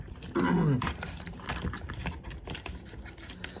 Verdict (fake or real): real